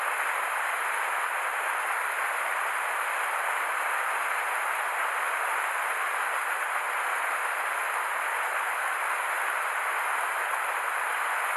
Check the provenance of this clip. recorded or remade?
recorded